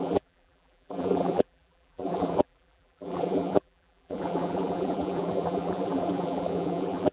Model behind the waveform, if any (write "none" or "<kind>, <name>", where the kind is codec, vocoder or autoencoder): vocoder, BigVGAN v2